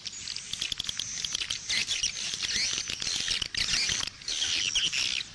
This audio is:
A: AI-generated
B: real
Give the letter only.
B